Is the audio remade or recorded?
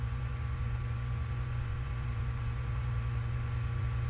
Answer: remade